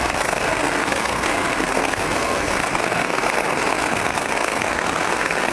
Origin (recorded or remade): remade